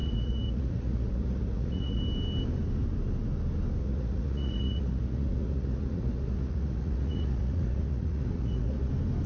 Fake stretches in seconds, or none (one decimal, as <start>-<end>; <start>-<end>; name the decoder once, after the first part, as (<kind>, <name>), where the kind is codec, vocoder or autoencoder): 0.0-2.0 (vocoder, Vocos); 3.8-8.9